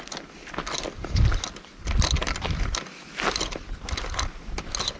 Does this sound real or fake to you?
real